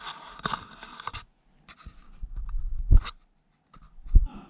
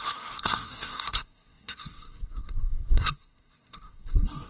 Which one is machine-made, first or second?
second